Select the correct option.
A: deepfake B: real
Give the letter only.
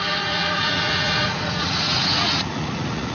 A